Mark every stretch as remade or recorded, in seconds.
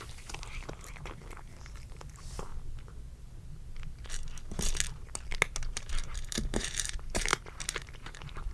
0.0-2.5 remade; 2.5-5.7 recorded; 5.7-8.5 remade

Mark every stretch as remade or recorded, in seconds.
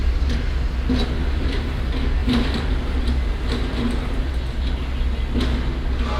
0.0-0.5 remade; 0.5-1.2 recorded; 1.2-1.8 remade; 1.8-2.2 recorded; 2.2-4.3 remade; 4.3-6.2 recorded